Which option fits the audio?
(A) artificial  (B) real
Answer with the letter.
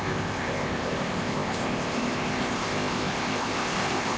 A